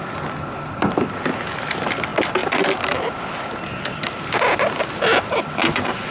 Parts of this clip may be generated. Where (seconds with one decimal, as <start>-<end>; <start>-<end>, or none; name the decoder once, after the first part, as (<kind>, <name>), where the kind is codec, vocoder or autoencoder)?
none